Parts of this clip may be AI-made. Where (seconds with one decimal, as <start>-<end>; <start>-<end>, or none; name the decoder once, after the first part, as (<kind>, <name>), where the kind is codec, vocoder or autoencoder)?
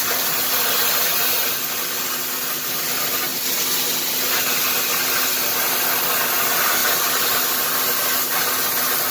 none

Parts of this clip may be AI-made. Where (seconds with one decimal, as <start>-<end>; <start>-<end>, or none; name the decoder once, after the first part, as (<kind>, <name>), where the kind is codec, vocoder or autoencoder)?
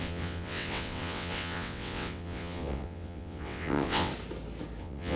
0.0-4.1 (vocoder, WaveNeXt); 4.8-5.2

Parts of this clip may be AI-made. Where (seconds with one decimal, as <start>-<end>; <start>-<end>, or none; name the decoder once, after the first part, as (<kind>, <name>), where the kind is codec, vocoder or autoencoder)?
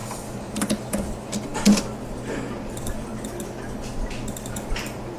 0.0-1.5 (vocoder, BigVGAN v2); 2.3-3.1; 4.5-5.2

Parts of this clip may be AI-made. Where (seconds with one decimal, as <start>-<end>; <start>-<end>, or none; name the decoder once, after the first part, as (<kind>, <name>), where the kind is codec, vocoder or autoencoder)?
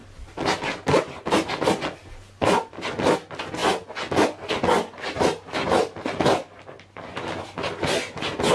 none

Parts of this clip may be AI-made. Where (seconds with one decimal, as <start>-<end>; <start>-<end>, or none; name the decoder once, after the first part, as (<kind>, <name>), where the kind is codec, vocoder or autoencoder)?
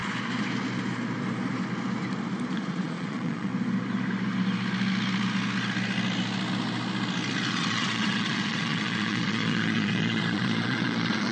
2.7-3.5 (vocoder, Vocos); 7.5-11.3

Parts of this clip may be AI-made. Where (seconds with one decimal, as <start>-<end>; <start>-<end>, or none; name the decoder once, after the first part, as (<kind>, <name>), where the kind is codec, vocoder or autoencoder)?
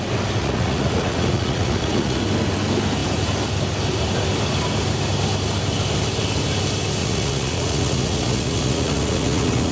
0.4-2.2 (vocoder, Vocos); 7.0-9.7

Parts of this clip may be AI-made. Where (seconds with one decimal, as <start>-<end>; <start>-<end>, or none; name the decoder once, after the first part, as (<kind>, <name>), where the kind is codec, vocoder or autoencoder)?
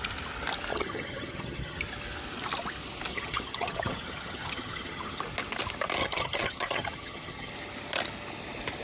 0.7-1.8 (vocoder, HiFi-GAN); 3.1-5.2; 6.0-7.5